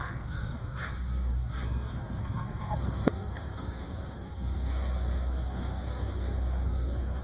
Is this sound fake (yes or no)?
yes